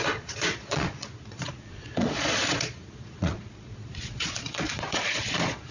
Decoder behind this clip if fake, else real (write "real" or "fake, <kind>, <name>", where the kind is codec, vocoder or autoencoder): fake, vocoder, Vocos